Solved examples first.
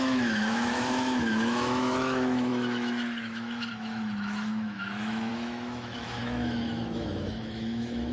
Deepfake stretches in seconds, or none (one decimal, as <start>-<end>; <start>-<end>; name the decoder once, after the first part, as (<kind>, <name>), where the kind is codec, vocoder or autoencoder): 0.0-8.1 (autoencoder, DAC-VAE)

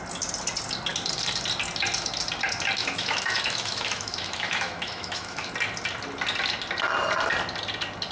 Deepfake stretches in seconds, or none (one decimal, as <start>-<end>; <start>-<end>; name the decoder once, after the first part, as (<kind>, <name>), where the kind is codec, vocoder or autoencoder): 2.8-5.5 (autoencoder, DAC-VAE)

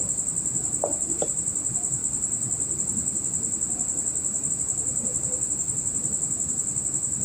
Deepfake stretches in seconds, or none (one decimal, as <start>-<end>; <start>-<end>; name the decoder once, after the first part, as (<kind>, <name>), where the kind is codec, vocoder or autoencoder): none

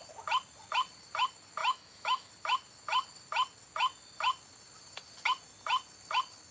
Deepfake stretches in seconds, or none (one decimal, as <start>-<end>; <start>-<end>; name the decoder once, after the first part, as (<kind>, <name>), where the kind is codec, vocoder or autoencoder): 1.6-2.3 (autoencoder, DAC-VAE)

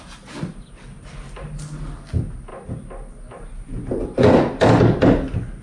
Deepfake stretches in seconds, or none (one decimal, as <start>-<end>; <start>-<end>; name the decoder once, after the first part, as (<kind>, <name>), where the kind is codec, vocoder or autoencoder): none